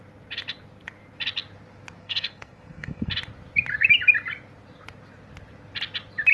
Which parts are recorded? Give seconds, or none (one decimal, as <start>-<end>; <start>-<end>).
0.0-2.0; 3.1-6.3